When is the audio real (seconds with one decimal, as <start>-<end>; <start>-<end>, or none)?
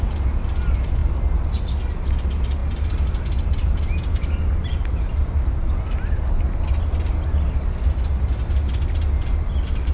0.0-9.9